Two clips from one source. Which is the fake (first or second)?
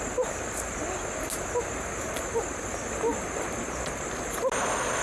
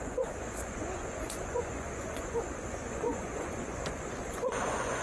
second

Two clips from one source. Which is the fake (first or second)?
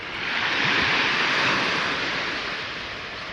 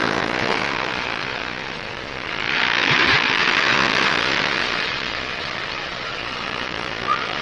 second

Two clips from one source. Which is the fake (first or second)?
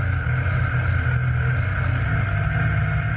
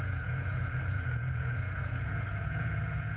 second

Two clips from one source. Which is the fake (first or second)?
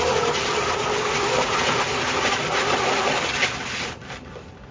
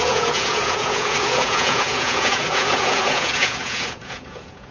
second